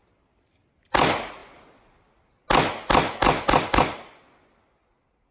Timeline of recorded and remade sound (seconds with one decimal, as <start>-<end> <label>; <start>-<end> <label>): 0.0-5.3 recorded